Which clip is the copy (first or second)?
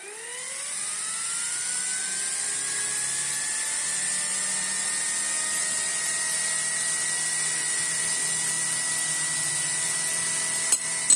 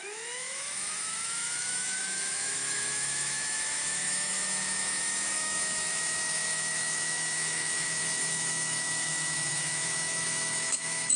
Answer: second